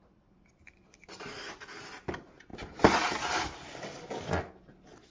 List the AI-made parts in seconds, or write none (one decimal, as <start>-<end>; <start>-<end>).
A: none